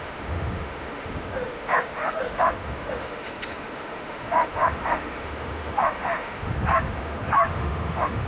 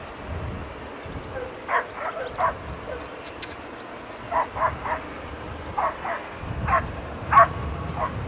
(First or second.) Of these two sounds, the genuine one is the second